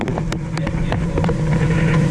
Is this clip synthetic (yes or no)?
yes